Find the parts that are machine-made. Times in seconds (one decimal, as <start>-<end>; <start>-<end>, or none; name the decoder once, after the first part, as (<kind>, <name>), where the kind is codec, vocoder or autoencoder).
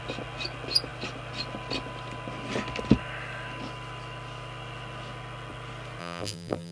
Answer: 6.0-6.7 (vocoder, BigVGAN v2)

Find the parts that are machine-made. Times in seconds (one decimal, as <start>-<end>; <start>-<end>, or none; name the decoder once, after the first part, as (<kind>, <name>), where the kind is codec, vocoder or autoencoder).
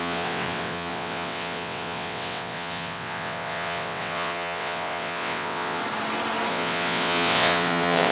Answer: 0.0-5.8 (vocoder, WaveNeXt); 6.5-8.1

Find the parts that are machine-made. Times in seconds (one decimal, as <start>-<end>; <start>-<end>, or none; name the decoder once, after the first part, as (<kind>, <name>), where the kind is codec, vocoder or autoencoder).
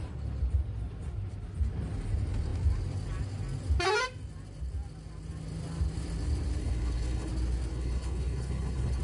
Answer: 6.6-7.3 (codec, HILCodec); 7.7-9.0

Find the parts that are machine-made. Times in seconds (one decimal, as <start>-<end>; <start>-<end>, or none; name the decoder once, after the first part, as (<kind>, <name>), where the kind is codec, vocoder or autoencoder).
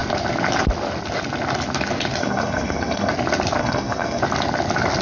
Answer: 2.2-3.1 (codec, SNAC); 3.6-4.2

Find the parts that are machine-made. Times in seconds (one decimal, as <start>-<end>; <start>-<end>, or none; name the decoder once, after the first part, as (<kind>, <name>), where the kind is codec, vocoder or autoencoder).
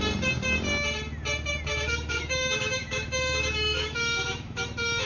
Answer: 1.7-5.1 (autoencoder, DAC-VAE)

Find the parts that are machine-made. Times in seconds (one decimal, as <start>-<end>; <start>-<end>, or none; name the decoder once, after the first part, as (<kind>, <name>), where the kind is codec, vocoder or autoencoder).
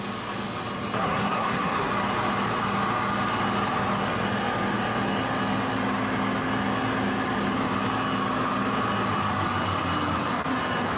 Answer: 1.0-1.9 (codec, SNAC)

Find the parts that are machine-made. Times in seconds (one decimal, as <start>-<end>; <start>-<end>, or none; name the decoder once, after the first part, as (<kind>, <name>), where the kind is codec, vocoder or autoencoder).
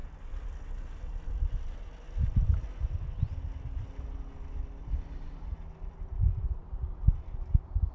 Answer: none